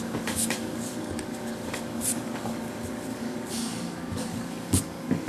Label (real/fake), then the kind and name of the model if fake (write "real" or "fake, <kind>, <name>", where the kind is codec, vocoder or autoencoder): fake, codec, DAC